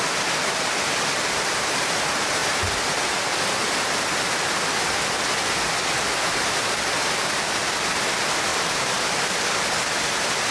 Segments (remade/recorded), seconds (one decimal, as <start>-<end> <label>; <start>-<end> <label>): 0.0-7.0 recorded; 7.0-7.7 remade; 7.7-8.5 recorded; 8.5-9.5 remade; 9.5-10.5 recorded